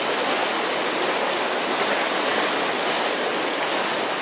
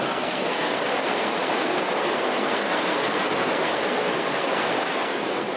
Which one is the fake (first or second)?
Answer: second